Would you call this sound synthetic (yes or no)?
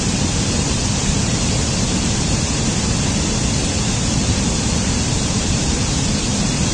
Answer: no